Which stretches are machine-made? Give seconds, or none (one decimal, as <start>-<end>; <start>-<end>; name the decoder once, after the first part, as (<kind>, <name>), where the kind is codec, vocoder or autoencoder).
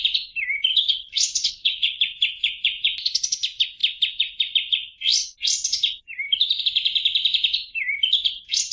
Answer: 0.7-2.0 (codec, HILCodec)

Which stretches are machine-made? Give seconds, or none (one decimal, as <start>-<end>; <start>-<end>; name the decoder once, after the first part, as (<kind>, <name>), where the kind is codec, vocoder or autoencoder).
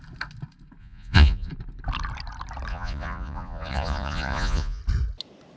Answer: 0.8-1.5 (vocoder, Vocos); 2.7-4.8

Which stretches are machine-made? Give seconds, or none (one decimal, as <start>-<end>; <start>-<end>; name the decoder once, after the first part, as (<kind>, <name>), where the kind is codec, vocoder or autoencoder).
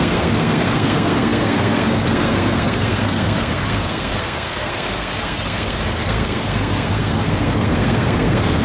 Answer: 0.0-8.6 (codec, SNAC)